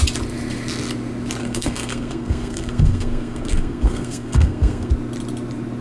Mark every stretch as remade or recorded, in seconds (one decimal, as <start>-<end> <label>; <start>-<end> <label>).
0.0-1.4 recorded; 1.4-4.9 remade; 4.9-5.8 recorded